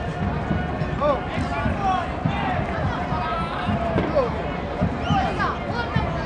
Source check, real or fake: real